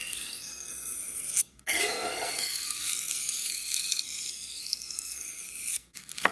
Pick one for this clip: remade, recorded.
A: remade